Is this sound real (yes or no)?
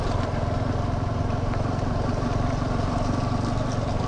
yes